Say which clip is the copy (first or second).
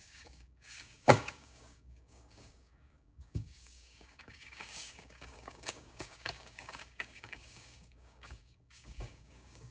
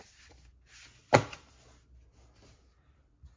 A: first